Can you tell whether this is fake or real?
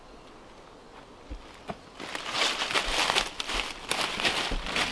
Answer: real